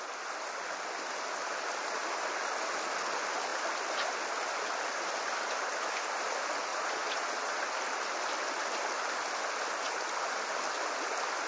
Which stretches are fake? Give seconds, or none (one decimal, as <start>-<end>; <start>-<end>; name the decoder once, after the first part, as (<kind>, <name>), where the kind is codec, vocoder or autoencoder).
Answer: 6.7-7.6 (vocoder, Vocos)